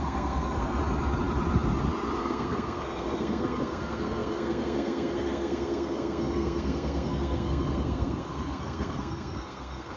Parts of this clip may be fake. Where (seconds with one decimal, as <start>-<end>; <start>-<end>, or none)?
0.0-0.8; 2.2-10.0